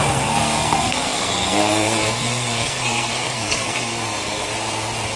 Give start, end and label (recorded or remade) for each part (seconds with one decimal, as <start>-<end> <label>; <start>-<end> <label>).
0.0-4.5 remade; 4.5-5.2 recorded